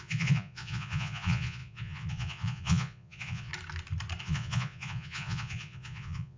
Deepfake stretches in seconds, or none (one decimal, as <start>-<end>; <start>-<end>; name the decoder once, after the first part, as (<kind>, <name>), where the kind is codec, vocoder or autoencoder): 0.0-3.5 (vocoder, Vocos); 4.2-6.4

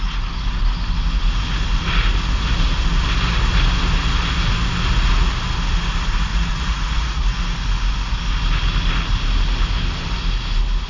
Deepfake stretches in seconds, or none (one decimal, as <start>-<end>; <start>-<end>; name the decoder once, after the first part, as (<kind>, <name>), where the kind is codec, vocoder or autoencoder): 6.3-7.2 (vocoder, Vocos)

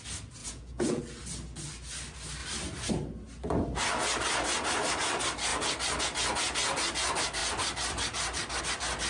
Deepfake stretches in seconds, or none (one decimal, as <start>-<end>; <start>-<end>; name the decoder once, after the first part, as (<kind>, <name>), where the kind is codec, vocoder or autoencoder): 0.4-1.0 (vocoder, Vocos)

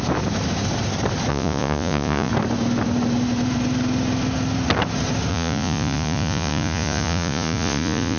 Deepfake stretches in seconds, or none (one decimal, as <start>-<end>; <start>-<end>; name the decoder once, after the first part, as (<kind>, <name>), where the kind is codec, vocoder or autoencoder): 1.3-2.3 (vocoder, Vocos); 5.3-8.2

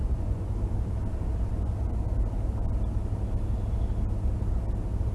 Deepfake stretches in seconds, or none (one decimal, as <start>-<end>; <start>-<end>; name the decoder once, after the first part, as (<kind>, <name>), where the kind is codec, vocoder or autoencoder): 0.0-0.5 (vocoder, Vocos)

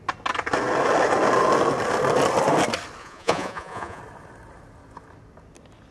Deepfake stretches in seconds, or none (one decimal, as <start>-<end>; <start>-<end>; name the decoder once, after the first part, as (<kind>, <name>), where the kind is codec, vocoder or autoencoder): 3.0-4.0 (vocoder, Vocos)

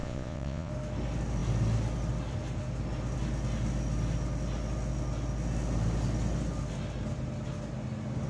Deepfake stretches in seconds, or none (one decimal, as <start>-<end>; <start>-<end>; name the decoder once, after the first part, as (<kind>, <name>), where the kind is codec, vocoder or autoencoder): 0.0-0.7 (vocoder, Vocos)